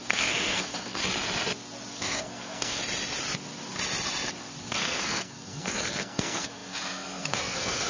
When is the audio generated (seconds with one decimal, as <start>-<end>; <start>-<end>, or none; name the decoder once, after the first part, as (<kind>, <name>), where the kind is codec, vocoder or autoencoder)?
0.0-1.0 (codec, SNAC); 1.9-2.8; 4.6-7.9